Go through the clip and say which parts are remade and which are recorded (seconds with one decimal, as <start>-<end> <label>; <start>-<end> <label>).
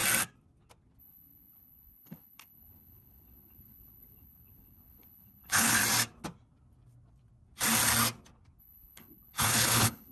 0.0-1.0 recorded; 1.0-5.8 remade; 5.8-8.6 recorded; 8.6-10.1 remade